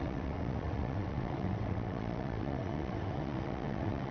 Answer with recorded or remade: remade